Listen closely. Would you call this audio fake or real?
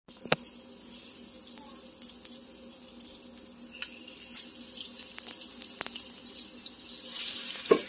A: real